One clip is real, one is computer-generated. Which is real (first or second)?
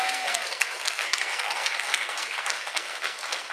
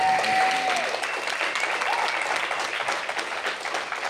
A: second